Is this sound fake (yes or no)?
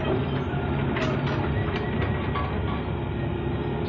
no